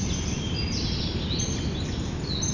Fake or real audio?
real